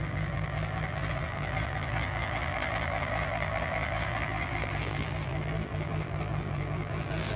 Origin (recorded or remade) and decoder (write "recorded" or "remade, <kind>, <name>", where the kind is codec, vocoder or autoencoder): remade, vocoder, BigVGAN v2